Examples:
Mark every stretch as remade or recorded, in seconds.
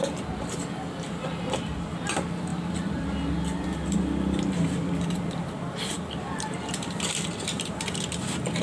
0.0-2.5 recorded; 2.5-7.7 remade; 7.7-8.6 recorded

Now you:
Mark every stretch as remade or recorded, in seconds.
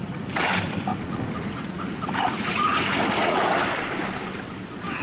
0.0-0.9 recorded; 0.9-3.4 remade; 3.4-5.0 recorded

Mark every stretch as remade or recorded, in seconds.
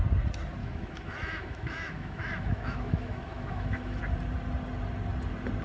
0.0-0.6 recorded; 0.6-4.0 remade; 4.0-5.6 recorded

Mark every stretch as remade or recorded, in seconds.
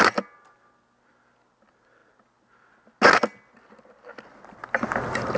0.0-5.4 recorded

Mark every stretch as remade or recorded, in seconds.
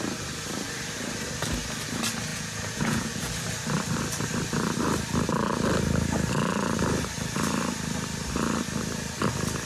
0.0-2.3 recorded; 2.3-3.3 remade; 3.3-9.7 recorded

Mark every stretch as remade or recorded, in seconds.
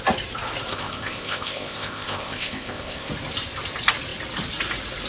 0.0-0.7 recorded; 0.7-3.1 remade; 3.1-5.1 recorded